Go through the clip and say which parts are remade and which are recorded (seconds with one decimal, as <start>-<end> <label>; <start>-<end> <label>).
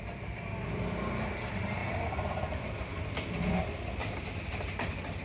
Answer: 0.0-1.8 recorded; 1.8-2.8 remade; 2.8-4.0 recorded; 4.0-5.2 remade